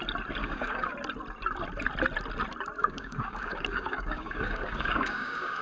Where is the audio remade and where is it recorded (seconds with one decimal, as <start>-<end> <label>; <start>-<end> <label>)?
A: 0.0-0.4 recorded; 0.4-0.9 remade; 0.9-2.8 recorded; 2.8-5.6 remade